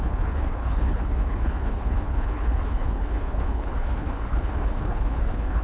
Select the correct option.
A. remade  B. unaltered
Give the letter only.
A